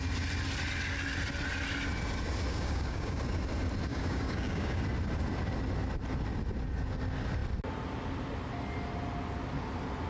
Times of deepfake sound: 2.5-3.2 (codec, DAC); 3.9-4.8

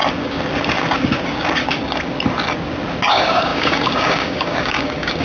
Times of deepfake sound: 3.1-5.2 (codec, DAC)

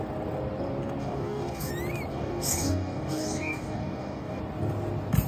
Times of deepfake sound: 1.0-1.7 (codec, DAC); 2.1-4.4

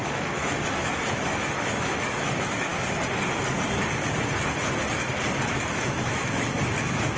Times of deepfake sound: 0.0-2.7 (autoencoder, DAC-VAE); 5.7-7.2

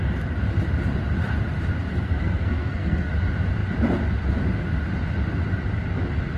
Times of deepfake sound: 1.9-3.1 (codec, SNAC)

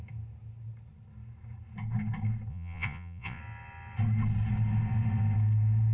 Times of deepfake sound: 2.5-3.4 (vocoder, Vocos)